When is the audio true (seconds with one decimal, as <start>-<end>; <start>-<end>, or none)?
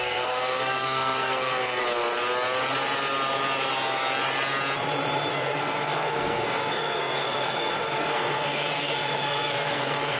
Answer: 1.8-5.3